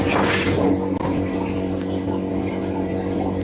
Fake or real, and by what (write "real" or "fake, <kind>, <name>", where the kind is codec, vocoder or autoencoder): real